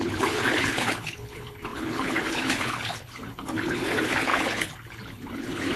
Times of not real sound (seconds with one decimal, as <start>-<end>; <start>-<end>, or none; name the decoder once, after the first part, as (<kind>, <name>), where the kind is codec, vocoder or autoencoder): 0.0-5.8 (codec, HILCodec)

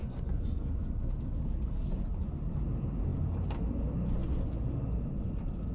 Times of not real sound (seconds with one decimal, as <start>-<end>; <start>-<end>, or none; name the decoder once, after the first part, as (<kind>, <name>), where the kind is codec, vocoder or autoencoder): 0.0-0.9 (vocoder, Vocos)

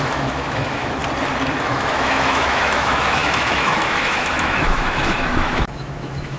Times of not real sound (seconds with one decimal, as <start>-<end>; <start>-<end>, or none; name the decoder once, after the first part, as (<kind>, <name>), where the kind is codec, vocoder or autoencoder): 0.0-1.0 (autoencoder, DAC-VAE); 1.6-6.4